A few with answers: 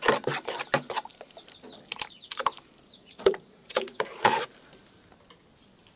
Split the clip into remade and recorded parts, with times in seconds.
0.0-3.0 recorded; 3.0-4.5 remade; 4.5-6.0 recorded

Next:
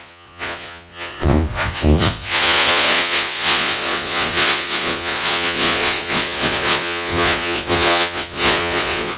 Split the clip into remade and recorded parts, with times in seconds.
0.0-9.2 remade